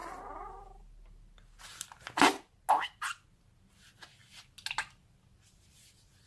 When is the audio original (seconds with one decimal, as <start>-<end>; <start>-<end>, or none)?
0.0-6.3